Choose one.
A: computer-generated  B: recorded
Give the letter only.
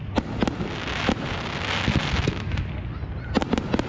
B